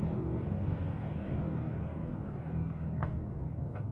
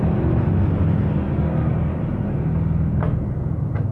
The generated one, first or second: first